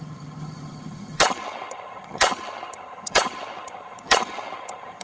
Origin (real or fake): fake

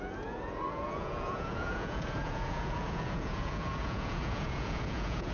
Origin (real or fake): fake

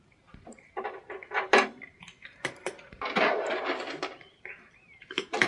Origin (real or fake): fake